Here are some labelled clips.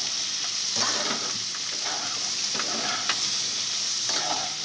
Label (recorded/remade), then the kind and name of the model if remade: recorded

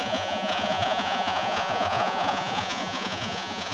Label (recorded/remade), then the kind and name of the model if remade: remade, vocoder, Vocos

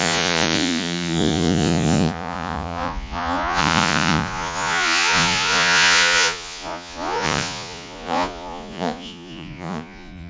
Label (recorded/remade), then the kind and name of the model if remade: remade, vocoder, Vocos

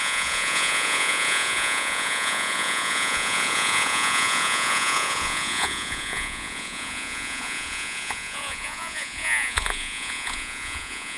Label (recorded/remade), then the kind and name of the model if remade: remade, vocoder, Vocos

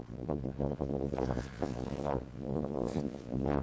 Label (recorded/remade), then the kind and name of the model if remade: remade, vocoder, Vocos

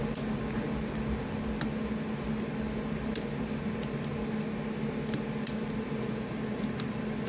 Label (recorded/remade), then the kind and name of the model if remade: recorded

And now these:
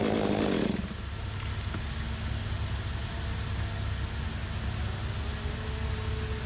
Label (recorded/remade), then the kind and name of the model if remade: recorded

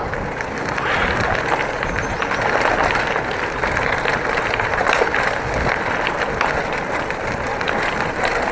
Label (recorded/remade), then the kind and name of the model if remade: recorded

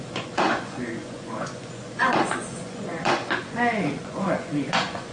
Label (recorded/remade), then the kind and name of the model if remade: remade, vocoder, Vocos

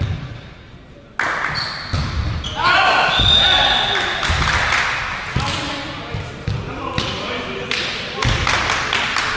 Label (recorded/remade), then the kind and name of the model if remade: recorded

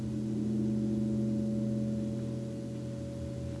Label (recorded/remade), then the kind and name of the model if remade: recorded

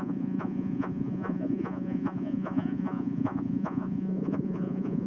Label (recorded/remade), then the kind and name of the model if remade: remade, vocoder, Vocos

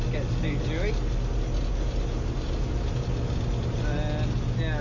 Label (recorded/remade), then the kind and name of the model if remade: recorded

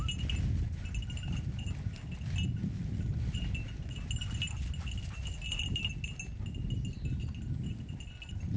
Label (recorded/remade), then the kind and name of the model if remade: recorded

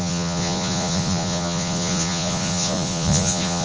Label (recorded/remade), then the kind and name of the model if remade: remade, vocoder, Vocos